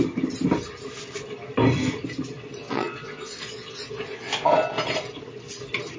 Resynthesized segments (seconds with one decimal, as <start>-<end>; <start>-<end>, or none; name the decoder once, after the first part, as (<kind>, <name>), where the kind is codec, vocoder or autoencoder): 2.6-4.5 (vocoder, Vocos)